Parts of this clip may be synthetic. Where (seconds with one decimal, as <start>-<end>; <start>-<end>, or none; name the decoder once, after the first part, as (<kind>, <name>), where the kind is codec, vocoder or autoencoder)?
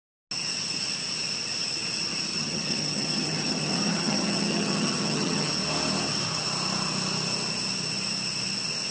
2.3-5.5 (vocoder, HiFi-GAN)